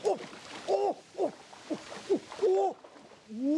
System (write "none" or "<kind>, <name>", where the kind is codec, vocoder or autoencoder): none